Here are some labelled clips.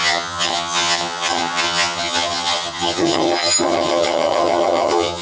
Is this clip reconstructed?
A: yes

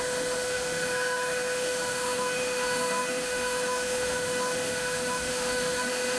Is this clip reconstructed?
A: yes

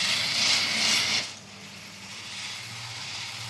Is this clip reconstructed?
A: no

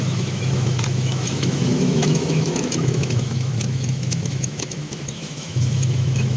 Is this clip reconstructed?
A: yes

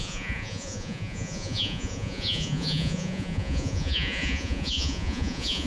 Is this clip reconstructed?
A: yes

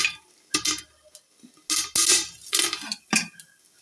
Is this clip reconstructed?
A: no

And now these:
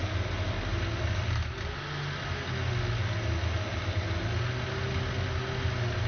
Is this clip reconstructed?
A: no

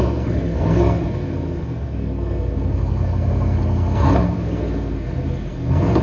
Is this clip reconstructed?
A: yes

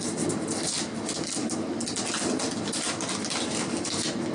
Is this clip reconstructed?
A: no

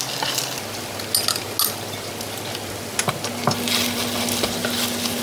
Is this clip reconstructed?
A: no